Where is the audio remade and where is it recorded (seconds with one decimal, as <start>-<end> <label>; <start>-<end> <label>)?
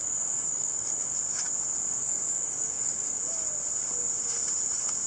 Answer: 0.0-1.1 remade; 1.1-2.0 recorded; 2.0-3.2 remade; 3.2-5.1 recorded